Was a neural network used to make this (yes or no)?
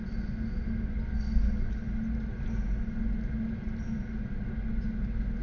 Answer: no